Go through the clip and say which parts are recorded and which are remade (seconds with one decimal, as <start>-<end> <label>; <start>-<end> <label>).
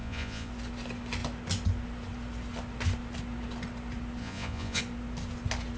0.0-0.5 remade; 0.5-4.2 recorded; 4.2-4.8 remade; 4.8-5.8 recorded